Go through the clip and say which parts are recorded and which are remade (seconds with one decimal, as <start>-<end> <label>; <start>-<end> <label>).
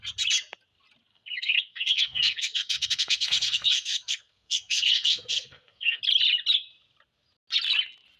0.0-1.1 recorded; 1.1-6.0 remade; 6.0-8.2 recorded